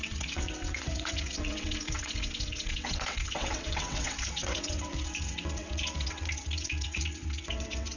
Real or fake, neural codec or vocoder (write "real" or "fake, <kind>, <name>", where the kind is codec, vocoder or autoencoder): fake, vocoder, WaveNeXt